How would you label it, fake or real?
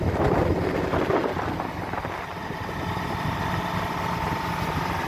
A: real